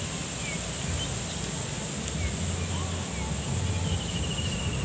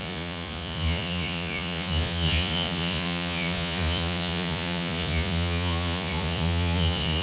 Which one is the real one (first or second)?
first